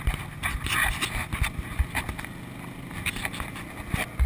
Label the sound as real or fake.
real